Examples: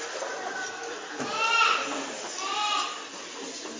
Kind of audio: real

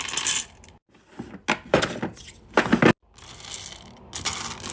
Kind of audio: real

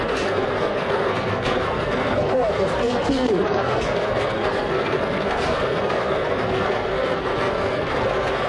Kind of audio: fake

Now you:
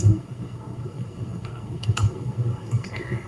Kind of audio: fake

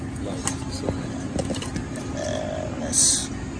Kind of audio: real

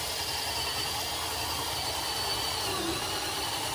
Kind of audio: real